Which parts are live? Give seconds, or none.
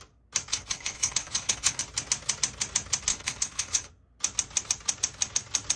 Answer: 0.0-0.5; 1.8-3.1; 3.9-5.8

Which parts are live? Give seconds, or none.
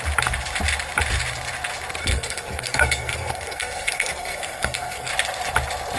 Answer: 0.0-2.0; 5.1-6.0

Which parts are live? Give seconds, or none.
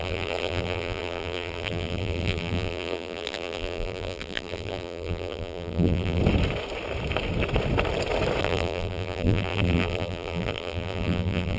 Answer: 6.2-8.4